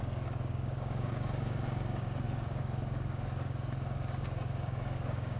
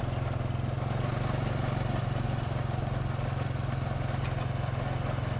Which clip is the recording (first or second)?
second